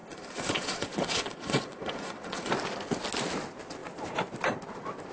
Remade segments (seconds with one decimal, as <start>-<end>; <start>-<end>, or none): 0.0-2.5